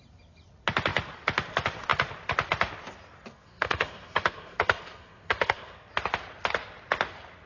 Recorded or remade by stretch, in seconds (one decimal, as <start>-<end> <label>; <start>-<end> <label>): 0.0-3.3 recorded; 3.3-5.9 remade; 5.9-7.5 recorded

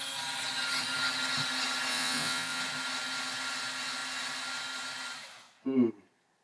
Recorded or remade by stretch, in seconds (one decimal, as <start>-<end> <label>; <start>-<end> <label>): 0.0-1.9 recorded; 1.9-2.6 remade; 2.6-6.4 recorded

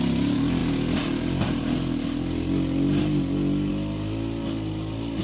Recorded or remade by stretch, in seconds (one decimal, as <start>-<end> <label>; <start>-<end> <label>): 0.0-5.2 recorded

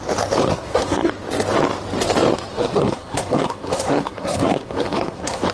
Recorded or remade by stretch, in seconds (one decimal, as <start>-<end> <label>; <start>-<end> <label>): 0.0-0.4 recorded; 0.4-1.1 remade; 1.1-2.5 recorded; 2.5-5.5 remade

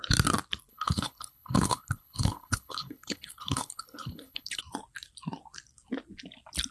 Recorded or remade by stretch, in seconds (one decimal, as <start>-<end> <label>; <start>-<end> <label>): 0.0-0.7 recorded; 0.7-4.6 remade; 4.6-6.7 recorded